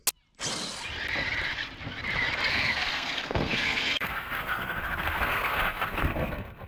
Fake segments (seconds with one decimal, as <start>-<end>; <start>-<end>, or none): 2.5-6.7